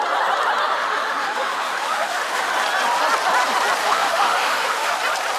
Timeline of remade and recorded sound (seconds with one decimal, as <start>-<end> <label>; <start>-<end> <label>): 0.0-0.7 recorded; 0.7-2.5 remade; 2.5-3.8 recorded; 3.8-5.0 remade; 5.0-5.4 recorded